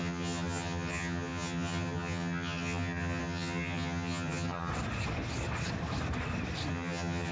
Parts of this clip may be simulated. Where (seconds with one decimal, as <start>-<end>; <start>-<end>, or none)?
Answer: 0.0-4.7; 6.7-7.3